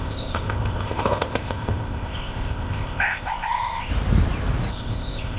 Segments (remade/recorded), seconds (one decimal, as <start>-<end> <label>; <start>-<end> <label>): 0.0-3.9 remade; 3.9-4.7 recorded; 4.7-5.4 remade